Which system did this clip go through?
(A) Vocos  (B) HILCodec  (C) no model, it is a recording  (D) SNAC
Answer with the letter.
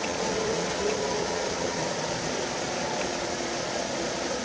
A